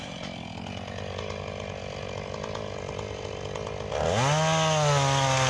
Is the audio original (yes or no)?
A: yes